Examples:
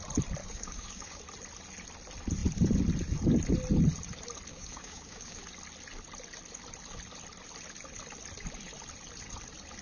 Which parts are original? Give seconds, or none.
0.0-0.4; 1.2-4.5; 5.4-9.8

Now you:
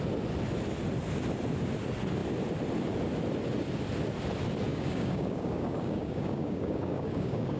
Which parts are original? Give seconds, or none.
0.0-4.7

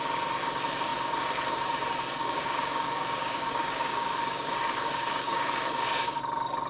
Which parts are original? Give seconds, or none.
0.0-2.2; 6.2-6.7

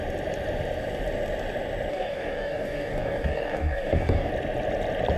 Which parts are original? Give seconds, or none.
0.0-1.9; 4.3-5.2

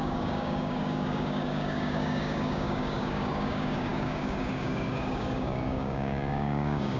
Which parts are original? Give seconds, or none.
none

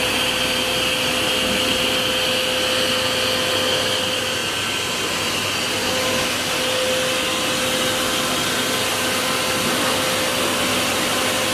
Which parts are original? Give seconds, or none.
0.0-11.5